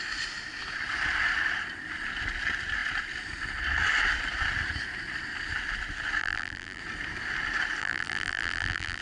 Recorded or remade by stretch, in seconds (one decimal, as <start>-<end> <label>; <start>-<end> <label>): 0.0-6.2 recorded; 6.2-6.8 remade; 6.8-7.8 recorded; 7.8-9.0 remade